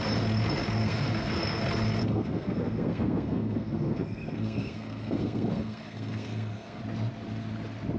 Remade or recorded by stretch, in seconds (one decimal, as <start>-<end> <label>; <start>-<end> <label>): 0.0-0.8 recorded; 0.8-1.6 remade; 1.6-2.0 recorded; 2.0-6.8 remade; 6.8-8.0 recorded